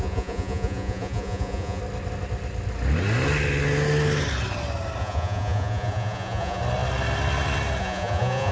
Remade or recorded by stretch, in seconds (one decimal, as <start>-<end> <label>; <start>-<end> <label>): 0.0-1.8 remade; 1.8-5.0 recorded; 5.0-6.6 remade; 6.6-7.8 recorded; 7.8-8.5 remade